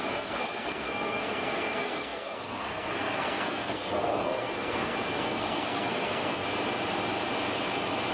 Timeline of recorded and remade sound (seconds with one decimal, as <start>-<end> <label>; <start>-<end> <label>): 0.0-6.4 remade; 6.4-8.1 recorded